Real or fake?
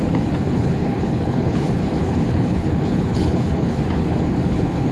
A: fake